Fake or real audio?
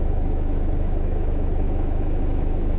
fake